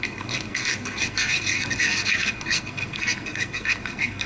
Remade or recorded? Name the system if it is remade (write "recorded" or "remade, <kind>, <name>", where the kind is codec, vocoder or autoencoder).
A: remade, codec, SNAC